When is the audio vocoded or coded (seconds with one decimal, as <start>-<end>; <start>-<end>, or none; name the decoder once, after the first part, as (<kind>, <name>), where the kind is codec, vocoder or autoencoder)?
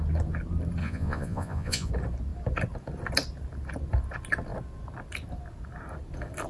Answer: 0.8-1.9 (vocoder, Vocos)